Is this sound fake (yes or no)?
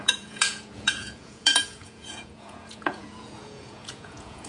yes